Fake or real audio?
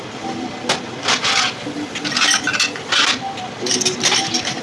real